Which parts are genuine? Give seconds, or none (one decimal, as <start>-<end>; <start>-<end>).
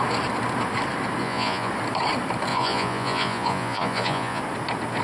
0.0-1.2; 1.7-2.5; 4.4-5.0